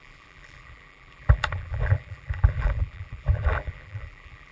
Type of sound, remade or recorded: remade